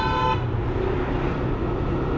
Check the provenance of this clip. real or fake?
real